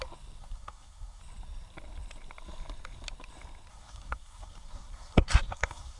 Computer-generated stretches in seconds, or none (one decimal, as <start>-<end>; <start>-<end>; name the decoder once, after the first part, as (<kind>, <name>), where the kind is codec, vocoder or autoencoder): 0.4-1.2 (codec, SNAC); 3.7-6.0